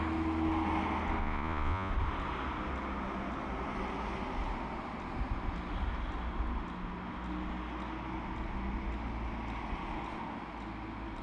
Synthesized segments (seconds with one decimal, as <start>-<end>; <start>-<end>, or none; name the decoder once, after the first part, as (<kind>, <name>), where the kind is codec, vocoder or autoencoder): 1.2-1.9 (vocoder, Vocos)